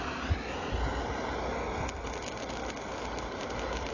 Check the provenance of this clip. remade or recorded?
recorded